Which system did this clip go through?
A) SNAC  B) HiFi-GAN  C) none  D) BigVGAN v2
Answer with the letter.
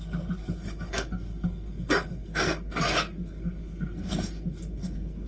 A